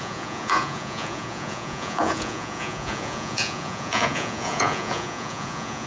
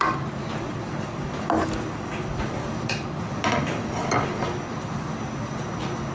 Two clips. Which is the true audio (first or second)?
second